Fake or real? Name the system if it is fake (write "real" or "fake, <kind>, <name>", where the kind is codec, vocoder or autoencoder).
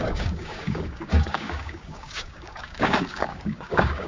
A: fake, codec, DAC